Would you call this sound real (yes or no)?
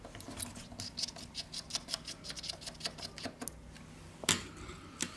yes